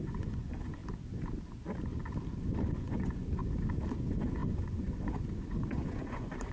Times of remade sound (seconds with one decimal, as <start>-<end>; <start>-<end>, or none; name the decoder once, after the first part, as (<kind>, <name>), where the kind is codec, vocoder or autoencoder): 0.0-0.8 (vocoder, Vocos); 2.7-3.4; 4.0-6.5